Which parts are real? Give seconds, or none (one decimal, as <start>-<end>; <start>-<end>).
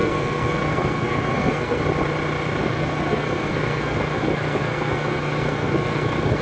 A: 1.8-2.6